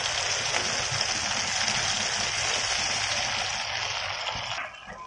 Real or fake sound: real